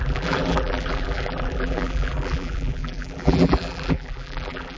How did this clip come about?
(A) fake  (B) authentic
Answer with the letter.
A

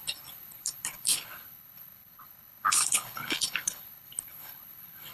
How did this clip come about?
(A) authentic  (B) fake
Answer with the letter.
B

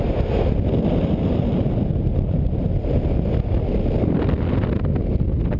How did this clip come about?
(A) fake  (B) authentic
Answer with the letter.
B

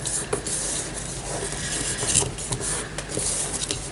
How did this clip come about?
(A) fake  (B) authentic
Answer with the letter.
B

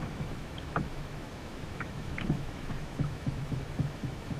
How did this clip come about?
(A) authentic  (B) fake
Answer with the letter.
B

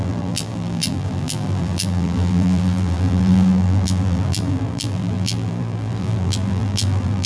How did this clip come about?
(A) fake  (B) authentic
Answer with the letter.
A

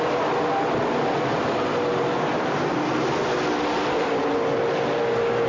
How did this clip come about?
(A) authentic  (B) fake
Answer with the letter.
A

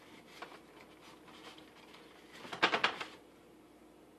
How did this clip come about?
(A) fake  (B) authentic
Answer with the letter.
B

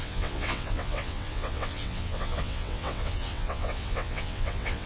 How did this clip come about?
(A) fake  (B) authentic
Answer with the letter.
A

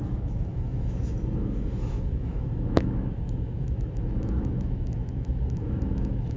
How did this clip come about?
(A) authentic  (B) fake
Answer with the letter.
B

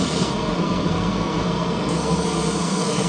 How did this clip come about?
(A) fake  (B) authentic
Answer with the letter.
A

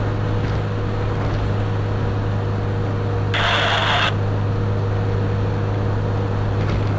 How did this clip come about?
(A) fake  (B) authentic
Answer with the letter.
B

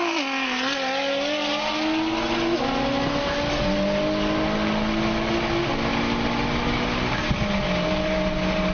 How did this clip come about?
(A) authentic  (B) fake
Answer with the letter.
A